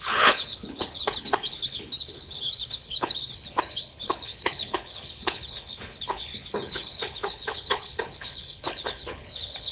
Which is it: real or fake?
fake